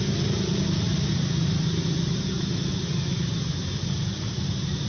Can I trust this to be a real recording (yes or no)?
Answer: yes